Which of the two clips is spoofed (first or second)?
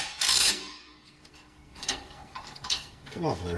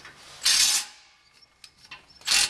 first